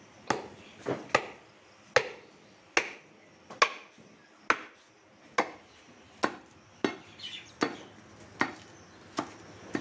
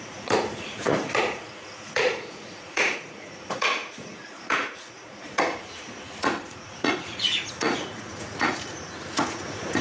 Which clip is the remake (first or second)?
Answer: second